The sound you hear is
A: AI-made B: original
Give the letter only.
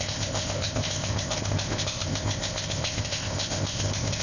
A